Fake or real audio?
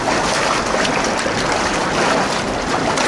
fake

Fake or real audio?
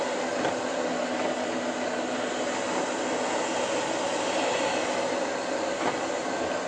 real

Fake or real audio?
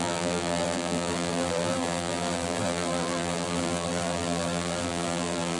fake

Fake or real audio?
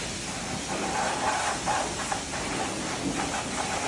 real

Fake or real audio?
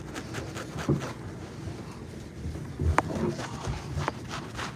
fake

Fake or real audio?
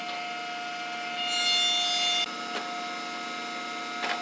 real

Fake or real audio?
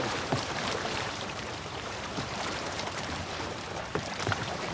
fake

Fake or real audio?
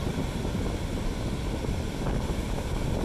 real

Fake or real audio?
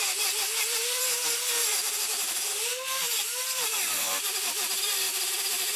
fake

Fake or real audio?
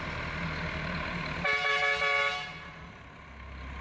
real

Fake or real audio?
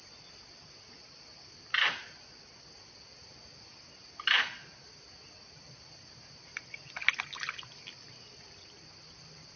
real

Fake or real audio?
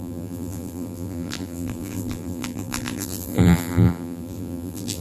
fake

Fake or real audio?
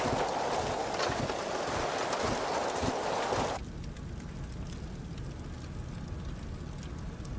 real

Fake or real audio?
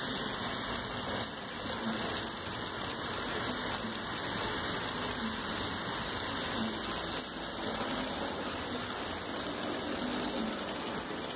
real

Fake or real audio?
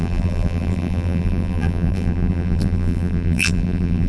fake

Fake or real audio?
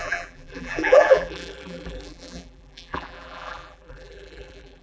fake